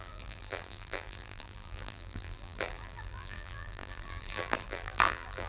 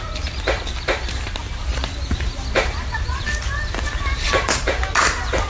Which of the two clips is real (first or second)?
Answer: second